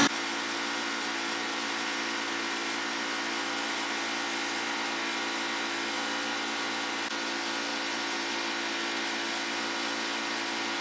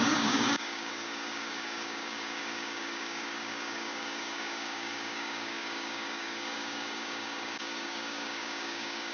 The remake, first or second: second